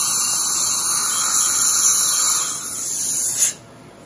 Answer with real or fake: real